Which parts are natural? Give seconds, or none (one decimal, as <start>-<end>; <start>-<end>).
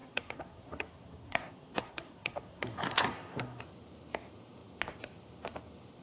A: 3.6-6.0